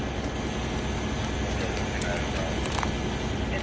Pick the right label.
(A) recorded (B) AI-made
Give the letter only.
A